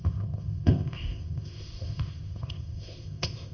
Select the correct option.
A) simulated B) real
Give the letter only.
A